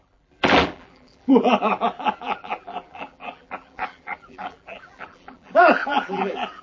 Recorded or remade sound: remade